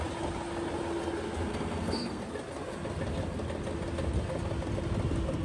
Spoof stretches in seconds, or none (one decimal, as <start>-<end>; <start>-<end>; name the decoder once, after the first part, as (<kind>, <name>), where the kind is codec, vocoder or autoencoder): 1.5-2.2 (codec, SNAC)